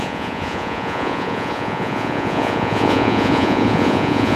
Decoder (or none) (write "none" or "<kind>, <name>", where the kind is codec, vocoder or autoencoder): vocoder, Vocos